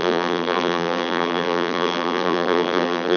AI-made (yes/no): yes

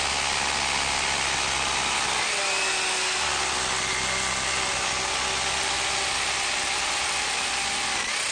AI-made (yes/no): no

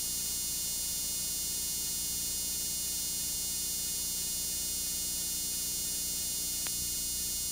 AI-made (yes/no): no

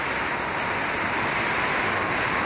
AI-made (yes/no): no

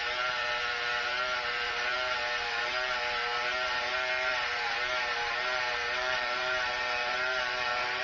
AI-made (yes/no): yes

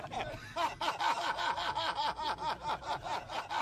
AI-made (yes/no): yes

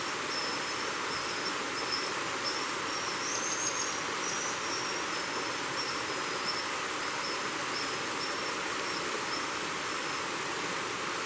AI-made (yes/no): no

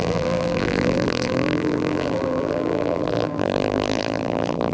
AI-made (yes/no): yes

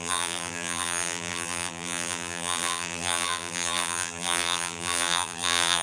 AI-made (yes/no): yes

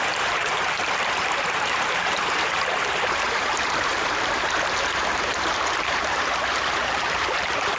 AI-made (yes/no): yes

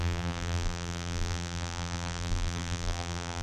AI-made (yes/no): yes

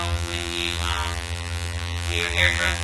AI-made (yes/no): yes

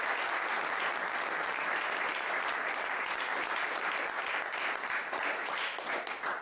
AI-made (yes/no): yes